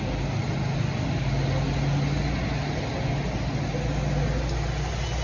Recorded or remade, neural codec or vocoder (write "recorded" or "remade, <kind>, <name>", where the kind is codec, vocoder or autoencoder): recorded